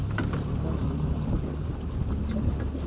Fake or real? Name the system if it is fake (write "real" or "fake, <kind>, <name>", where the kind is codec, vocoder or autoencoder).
real